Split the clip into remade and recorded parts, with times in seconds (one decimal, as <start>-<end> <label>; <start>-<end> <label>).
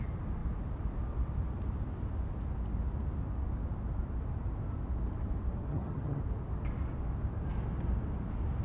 0.0-5.7 recorded; 5.7-6.2 remade; 6.2-8.6 recorded